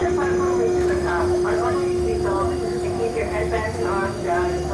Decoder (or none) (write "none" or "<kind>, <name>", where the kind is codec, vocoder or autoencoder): autoencoder, DAC-VAE